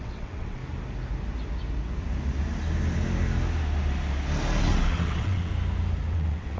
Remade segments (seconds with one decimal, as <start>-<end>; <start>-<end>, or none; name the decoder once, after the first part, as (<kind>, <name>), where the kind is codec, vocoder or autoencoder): 0.0-0.6 (vocoder, WaveNeXt); 4.6-5.5; 6.1-6.6